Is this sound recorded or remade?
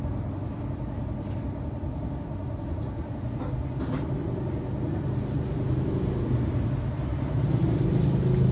recorded